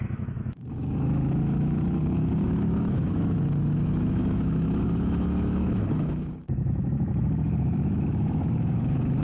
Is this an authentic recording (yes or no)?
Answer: no